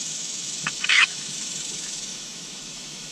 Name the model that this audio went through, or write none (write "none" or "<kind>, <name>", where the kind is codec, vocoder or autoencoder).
autoencoder, DAC-VAE